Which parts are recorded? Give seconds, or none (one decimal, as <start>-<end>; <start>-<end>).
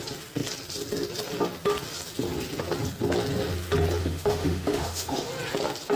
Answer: 0.0-4.0; 5.3-6.0